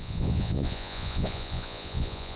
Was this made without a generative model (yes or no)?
no